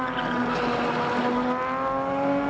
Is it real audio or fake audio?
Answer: real